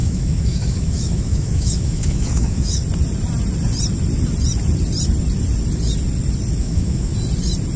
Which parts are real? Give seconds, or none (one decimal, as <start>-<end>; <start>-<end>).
2.8-6.6; 7.1-7.8